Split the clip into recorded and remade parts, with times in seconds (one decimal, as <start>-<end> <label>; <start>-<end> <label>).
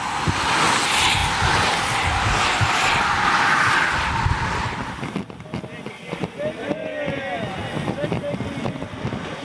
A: 0.0-9.4 recorded